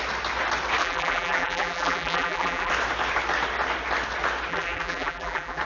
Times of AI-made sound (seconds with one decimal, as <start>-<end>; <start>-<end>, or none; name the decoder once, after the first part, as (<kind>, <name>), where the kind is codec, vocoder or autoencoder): 0.8-2.7 (vocoder, BigVGAN v2); 4.5-5.6